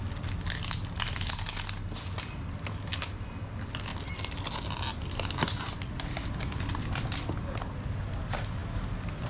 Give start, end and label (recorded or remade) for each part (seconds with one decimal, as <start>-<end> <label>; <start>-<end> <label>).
0.0-3.9 recorded; 3.9-6.8 remade; 6.8-9.3 recorded